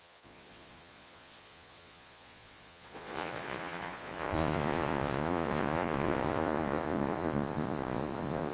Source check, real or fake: fake